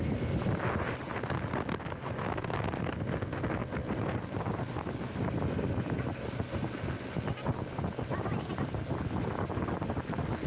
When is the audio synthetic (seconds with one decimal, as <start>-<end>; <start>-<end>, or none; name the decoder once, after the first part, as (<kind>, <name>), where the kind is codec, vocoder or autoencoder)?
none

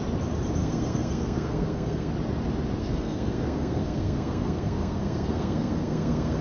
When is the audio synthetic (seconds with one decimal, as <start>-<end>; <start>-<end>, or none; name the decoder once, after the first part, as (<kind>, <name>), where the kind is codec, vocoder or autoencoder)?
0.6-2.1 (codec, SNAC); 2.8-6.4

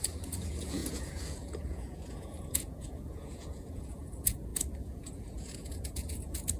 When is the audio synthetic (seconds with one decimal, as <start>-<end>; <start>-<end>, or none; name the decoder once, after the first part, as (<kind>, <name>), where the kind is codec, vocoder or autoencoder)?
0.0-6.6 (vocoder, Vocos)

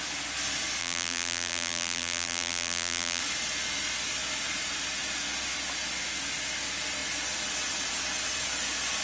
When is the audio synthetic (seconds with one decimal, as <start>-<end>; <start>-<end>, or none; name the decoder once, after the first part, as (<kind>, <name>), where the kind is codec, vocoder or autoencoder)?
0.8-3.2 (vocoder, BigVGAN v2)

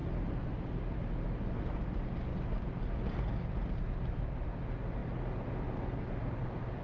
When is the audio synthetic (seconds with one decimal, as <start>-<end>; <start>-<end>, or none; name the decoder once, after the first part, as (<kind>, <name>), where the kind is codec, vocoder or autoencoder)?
2.3-3.8 (vocoder, BigVGAN v2); 5.0-6.8